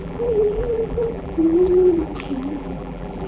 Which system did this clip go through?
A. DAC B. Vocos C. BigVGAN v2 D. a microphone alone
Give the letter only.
C